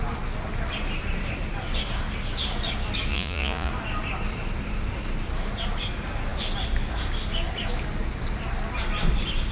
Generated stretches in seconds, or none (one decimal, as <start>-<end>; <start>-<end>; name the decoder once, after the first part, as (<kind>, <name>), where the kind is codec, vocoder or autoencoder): 3.1-3.7 (vocoder, Vocos)